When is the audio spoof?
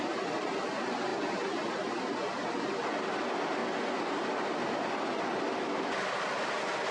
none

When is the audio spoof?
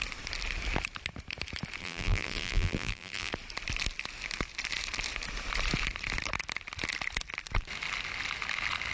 1.8-3.3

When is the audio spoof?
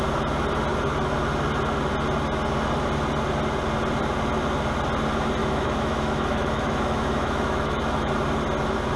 5.4-8.1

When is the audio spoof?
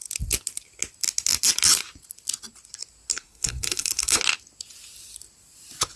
3.1-4.2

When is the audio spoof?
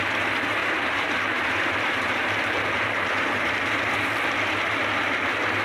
0.6-3.4